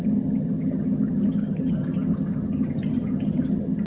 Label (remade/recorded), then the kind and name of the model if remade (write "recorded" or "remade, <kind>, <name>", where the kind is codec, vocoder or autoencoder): remade, vocoder, HiFi-GAN